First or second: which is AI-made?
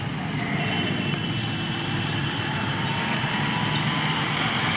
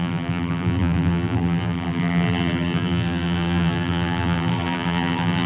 second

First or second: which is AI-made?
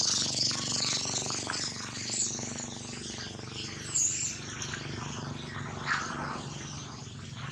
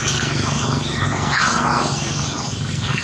second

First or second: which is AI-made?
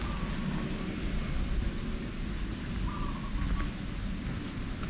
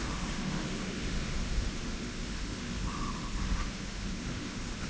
second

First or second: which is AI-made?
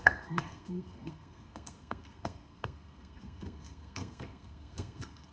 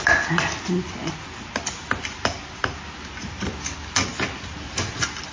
first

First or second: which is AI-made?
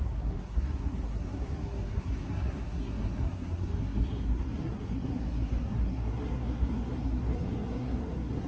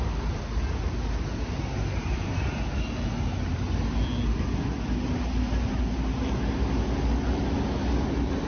first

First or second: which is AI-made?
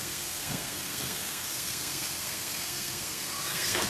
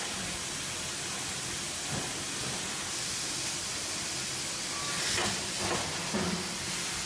first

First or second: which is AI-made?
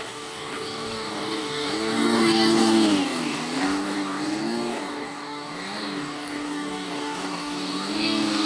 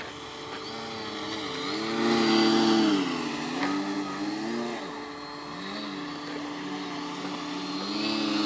first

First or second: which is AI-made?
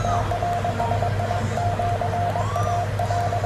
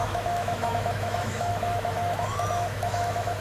second